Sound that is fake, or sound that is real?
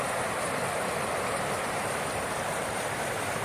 fake